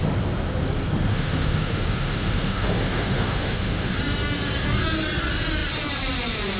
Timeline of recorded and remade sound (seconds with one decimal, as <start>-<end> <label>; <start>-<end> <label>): 0.0-1.1 recorded; 1.1-3.9 remade; 3.9-6.6 recorded